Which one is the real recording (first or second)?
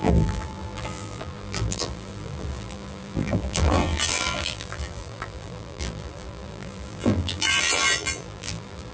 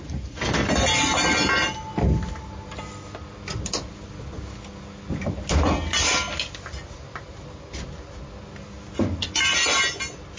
second